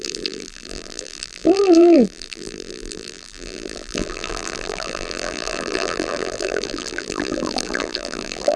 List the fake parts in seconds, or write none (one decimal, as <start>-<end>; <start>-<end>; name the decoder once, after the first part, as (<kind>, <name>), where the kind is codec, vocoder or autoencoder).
0.0-8.6 (vocoder, BigVGAN v2)